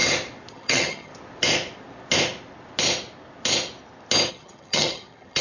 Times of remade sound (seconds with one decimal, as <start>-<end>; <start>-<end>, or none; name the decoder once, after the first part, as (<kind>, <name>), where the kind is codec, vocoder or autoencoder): 0.5-1.1 (vocoder, HiFi-GAN); 4.3-5.4